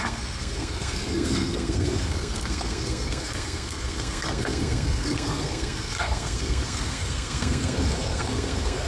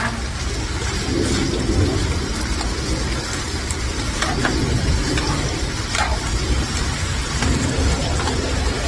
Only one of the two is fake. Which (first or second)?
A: first